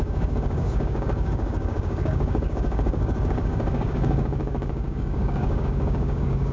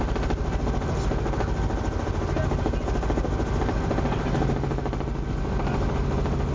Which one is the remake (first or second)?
first